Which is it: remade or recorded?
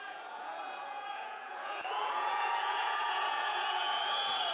remade